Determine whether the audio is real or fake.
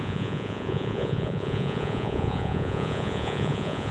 fake